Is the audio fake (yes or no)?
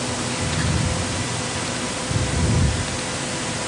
no